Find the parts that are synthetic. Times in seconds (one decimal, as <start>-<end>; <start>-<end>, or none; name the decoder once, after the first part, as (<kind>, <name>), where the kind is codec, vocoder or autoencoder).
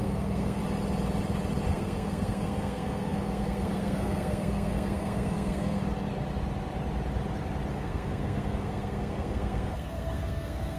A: 0.0-0.6 (codec, SNAC); 1.7-5.8; 7.7-10.8